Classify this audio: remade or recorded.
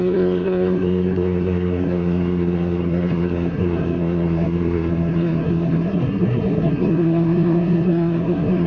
remade